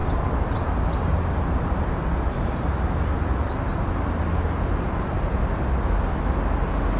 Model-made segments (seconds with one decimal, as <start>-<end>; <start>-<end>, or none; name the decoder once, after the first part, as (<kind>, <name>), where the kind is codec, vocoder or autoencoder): none